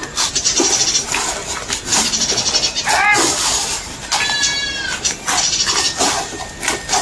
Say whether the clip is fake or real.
real